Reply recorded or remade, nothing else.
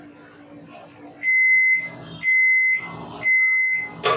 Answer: recorded